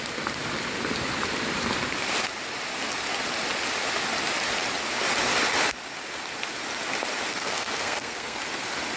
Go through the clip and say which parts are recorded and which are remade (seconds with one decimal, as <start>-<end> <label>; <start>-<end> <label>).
0.0-7.3 recorded; 7.3-8.4 remade; 8.4-9.0 recorded